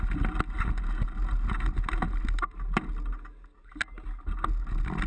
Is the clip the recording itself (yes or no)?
yes